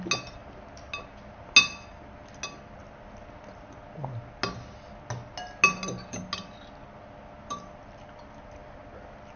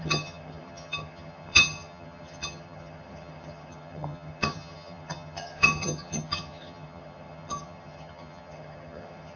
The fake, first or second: second